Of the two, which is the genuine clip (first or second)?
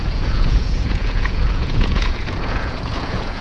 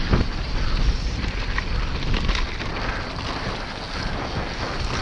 second